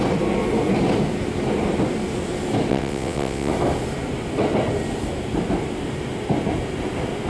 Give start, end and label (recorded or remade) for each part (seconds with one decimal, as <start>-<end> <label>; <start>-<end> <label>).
0.0-2.7 recorded; 2.7-3.5 remade; 3.5-7.3 recorded